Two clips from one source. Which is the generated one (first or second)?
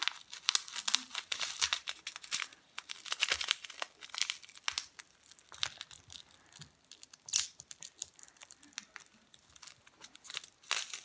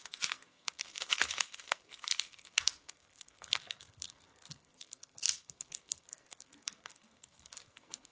second